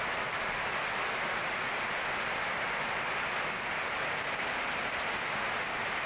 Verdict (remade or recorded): recorded